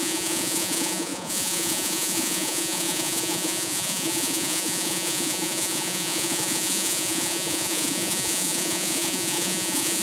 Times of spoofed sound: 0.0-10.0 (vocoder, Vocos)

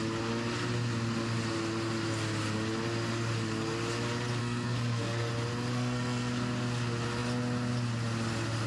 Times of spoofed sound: 4.4-5.3 (codec, SNAC); 5.7-6.3

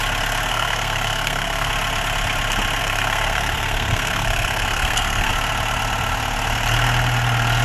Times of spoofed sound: 0.5-1.7 (codec, SNAC); 2.8-5.3

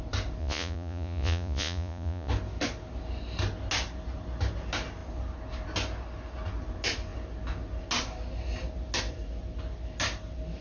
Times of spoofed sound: 0.4-2.3 (vocoder, Vocos)

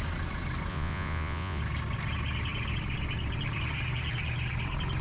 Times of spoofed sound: 0.7-1.6 (vocoder, Vocos)

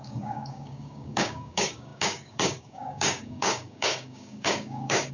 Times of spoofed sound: 0.0-5.1 (codec, DAC)